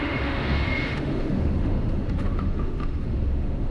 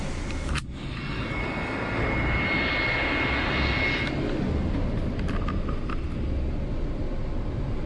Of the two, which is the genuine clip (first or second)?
second